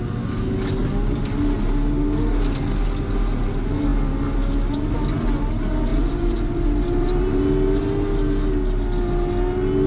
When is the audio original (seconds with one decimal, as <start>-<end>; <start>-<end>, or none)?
0.0-5.9; 7.4-9.9